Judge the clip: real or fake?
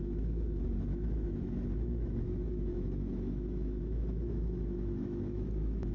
fake